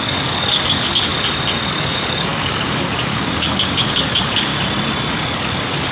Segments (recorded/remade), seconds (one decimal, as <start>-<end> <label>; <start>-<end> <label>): 0.0-1.1 remade; 1.1-1.7 recorded; 1.7-4.5 remade; 4.5-5.1 recorded; 5.1-5.9 remade